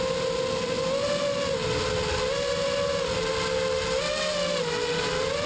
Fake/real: real